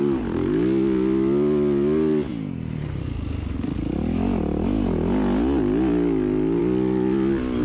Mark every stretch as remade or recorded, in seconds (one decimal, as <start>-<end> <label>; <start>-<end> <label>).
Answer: 0.0-7.6 recorded